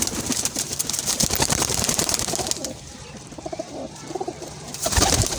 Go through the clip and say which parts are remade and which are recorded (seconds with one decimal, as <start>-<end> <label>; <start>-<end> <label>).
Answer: 0.0-0.7 remade; 0.7-1.4 recorded; 1.4-5.4 remade